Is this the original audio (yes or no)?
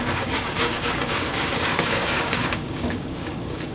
no